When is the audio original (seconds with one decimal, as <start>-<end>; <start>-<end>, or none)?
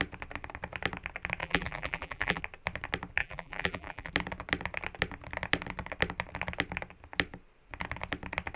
0.0-1.4; 2.4-3.2; 4.1-8.6